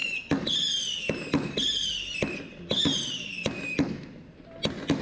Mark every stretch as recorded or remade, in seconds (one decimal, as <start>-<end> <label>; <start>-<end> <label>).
0.0-5.0 recorded